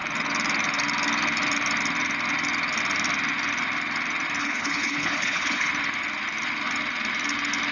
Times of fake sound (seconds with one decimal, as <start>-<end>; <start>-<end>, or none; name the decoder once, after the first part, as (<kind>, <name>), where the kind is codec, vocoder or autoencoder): 4.4-5.7 (codec, HILCodec)